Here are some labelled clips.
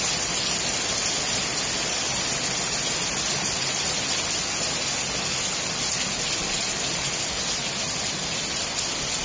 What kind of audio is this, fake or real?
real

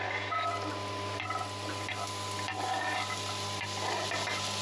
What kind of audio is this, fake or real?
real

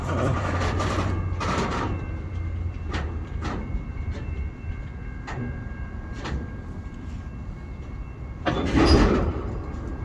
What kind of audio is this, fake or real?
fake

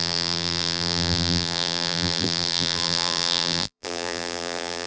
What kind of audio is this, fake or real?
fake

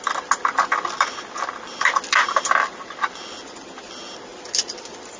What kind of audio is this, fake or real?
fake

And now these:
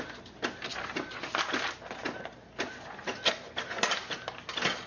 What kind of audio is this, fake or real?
real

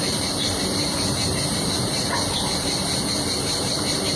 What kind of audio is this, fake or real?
fake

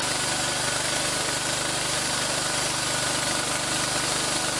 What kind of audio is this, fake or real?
real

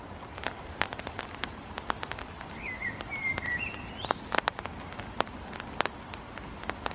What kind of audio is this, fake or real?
real